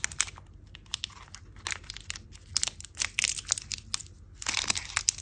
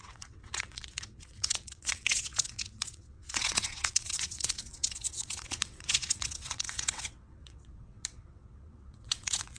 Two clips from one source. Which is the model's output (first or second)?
second